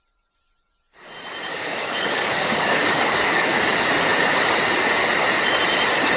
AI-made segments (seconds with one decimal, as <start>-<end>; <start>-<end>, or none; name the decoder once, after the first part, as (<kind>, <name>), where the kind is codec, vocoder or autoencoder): 1.5-3.6 (codec, DAC)